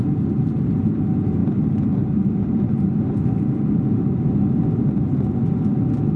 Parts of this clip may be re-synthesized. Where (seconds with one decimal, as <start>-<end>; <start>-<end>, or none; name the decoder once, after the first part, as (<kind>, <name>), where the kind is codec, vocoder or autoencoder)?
none